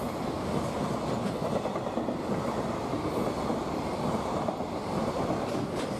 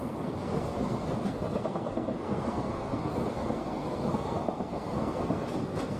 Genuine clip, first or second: first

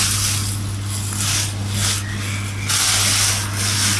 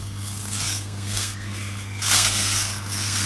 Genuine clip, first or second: first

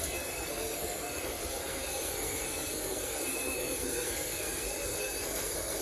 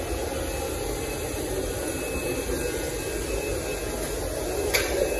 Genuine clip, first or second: second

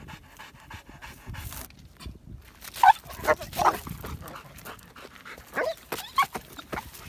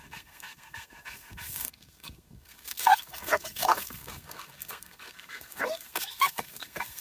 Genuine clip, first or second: first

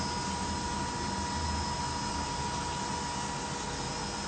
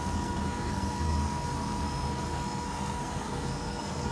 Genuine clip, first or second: first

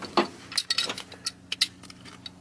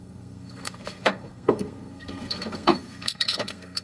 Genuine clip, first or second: first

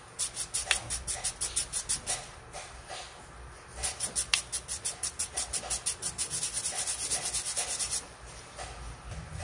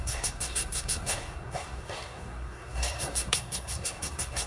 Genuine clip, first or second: first